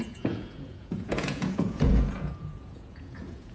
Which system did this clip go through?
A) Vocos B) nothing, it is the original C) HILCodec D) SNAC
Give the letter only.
A